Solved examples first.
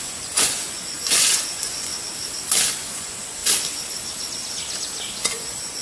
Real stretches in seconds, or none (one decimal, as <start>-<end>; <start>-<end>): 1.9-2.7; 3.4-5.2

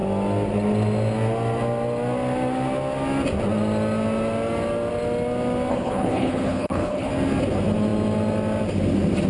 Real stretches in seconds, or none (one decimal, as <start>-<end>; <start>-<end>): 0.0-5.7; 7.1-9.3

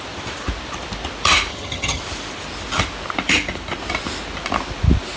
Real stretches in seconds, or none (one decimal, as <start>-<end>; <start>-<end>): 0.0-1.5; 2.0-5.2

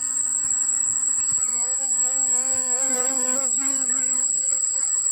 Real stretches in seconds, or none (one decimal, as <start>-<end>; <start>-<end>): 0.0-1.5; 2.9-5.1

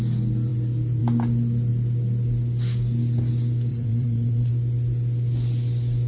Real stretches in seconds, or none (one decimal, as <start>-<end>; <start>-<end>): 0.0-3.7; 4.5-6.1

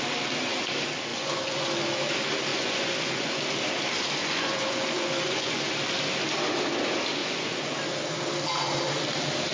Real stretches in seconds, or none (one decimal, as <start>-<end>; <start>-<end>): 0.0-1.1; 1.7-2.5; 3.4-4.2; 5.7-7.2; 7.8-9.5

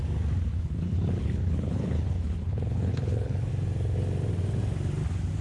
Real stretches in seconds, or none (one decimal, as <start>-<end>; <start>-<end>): 0.0-0.5; 3.5-5.4